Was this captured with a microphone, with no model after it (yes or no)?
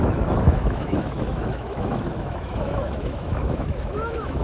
no